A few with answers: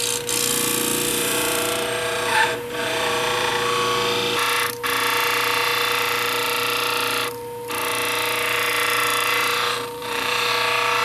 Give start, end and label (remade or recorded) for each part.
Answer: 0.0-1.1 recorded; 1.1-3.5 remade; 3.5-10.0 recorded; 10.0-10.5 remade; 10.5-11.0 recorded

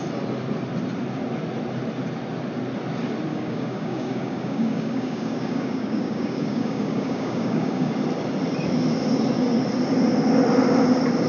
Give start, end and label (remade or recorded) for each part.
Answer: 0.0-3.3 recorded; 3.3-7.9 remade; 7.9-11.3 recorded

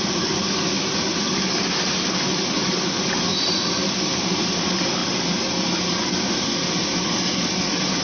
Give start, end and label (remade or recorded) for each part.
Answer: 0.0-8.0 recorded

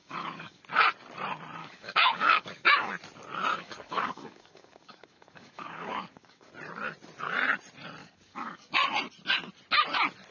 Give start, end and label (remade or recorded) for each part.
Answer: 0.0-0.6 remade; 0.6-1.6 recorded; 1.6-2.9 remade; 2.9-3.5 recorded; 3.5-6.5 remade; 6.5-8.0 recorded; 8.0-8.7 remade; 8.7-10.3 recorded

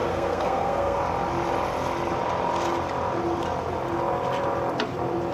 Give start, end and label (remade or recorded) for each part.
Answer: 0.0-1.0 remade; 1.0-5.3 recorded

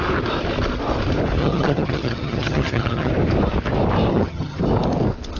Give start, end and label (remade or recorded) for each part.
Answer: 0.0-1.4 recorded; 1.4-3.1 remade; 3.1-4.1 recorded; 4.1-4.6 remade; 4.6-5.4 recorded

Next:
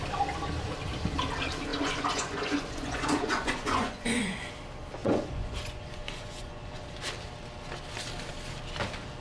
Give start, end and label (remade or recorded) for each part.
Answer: 0.0-1.7 recorded; 1.7-4.5 remade; 4.5-5.0 recorded; 5.0-7.0 remade; 7.0-9.2 recorded